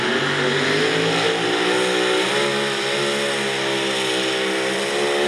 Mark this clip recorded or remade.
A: recorded